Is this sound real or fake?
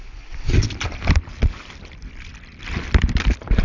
real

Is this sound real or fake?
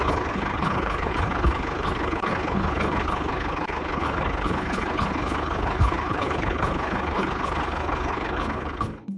fake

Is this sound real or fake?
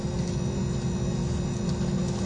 real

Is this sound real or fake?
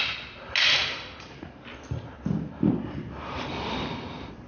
real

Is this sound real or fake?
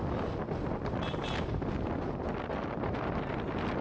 real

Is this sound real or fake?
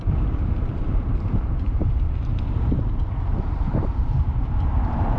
fake